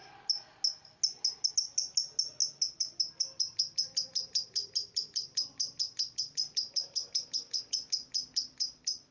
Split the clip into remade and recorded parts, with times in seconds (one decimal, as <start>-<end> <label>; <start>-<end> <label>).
0.0-9.1 recorded